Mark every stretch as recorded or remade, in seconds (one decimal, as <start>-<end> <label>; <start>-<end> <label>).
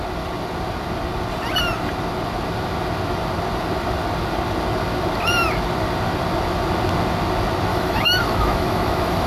0.0-7.7 recorded; 7.7-9.3 remade